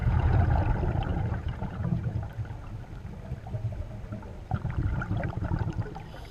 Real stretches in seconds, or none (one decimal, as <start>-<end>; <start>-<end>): 0.6-1.1; 2.3-6.3

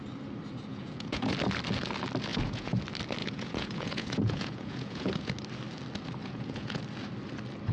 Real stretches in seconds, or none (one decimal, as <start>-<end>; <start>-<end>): 0.0-0.7; 1.3-2.3; 2.8-3.2; 5.3-6.2; 6.8-7.7

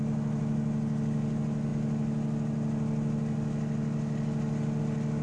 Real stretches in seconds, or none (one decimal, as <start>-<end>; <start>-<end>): 0.0-5.2

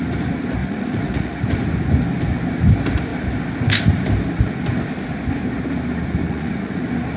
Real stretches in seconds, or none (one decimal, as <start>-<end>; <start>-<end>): 0.0-0.6; 1.4-6.2; 6.8-7.2

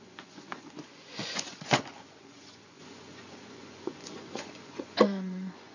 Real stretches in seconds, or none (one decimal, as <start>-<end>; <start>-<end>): none